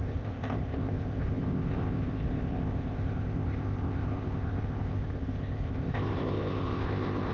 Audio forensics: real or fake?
fake